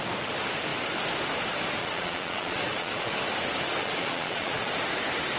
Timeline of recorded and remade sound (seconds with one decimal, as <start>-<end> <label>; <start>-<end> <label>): 0.0-1.8 recorded; 1.8-3.1 remade; 3.1-3.8 recorded; 3.8-4.7 remade; 4.7-5.4 recorded